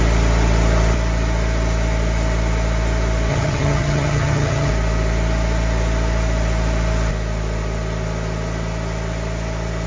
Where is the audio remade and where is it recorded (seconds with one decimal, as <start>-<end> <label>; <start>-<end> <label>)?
0.0-3.3 recorded; 3.3-4.7 remade; 4.7-9.9 recorded